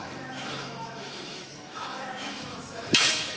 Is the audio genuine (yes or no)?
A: no